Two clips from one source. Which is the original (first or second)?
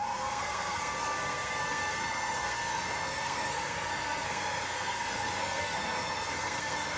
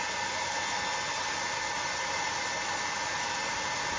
second